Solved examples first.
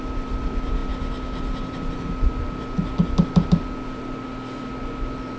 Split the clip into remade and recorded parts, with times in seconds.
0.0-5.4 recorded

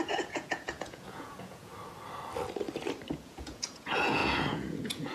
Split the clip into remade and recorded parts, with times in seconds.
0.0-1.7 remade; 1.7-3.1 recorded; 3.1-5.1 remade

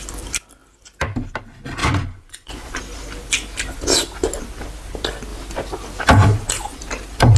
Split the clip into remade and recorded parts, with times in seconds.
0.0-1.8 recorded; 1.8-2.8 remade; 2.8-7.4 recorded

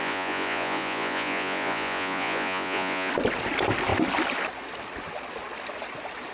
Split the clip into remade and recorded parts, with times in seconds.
0.0-3.1 remade; 3.1-6.3 recorded

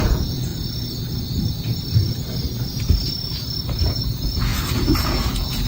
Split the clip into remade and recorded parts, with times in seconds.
0.0-0.5 remade; 0.5-3.8 recorded; 3.8-4.5 remade; 4.5-5.0 recorded; 5.0-5.7 remade

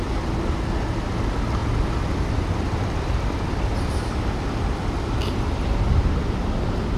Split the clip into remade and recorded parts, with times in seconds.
0.0-7.0 recorded

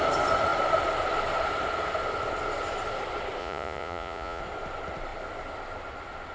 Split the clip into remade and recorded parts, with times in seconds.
0.0-3.4 recorded; 3.4-4.4 remade; 4.4-6.3 recorded